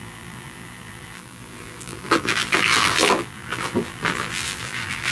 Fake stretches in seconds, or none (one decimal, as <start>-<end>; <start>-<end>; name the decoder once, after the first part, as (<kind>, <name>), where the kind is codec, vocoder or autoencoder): 0.0-5.1 (vocoder, BigVGAN v2)